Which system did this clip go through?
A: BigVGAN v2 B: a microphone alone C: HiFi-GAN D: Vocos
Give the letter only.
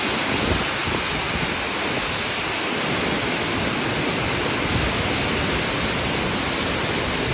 B